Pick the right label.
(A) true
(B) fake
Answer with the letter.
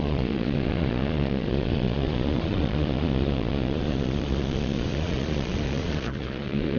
B